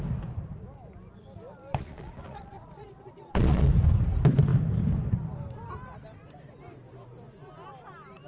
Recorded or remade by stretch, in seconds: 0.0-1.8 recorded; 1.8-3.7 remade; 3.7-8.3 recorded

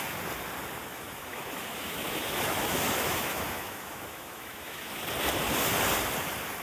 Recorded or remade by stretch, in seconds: 0.0-0.9 recorded; 0.9-4.9 remade; 4.9-6.6 recorded

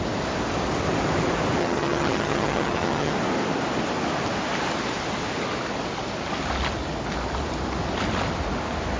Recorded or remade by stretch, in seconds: 0.0-1.6 recorded; 1.6-3.1 remade; 3.1-9.0 recorded

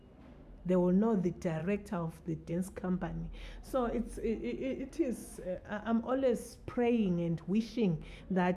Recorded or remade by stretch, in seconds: 0.0-1.6 recorded; 1.6-2.5 remade; 2.5-5.2 recorded; 5.2-8.2 remade; 8.2-8.6 recorded

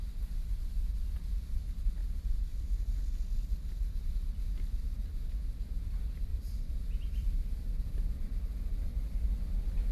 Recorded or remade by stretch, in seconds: 0.0-2.0 recorded; 2.0-3.5 remade; 3.5-6.3 recorded; 6.3-8.9 remade; 8.9-9.9 recorded

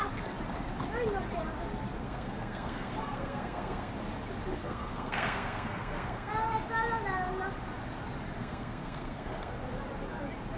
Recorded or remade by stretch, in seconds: 0.0-2.0 recorded; 2.0-3.9 remade; 3.9-4.5 recorded; 4.5-6.3 remade; 6.3-8.4 recorded; 8.4-9.5 remade; 9.5-10.6 recorded

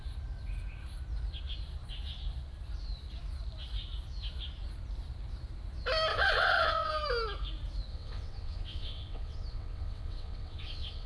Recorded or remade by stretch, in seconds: 0.0-6.1 recorded; 6.1-6.9 remade; 6.9-7.9 recorded; 7.9-11.1 remade

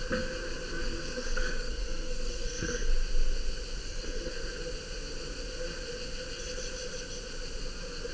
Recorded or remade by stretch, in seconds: 0.0-0.8 recorded; 0.8-2.9 remade; 2.9-3.8 recorded; 3.8-4.3 remade; 4.3-8.1 recorded